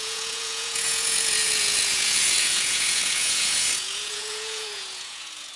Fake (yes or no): yes